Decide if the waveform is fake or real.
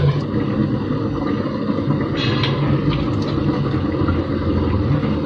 real